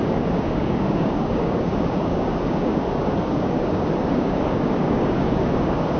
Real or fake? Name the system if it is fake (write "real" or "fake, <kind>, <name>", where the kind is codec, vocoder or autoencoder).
fake, codec, DAC